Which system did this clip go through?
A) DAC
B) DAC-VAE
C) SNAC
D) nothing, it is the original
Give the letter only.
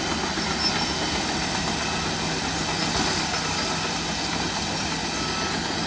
D